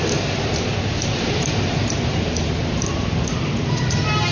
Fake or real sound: real